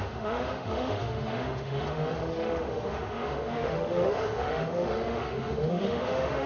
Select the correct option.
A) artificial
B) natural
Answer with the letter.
A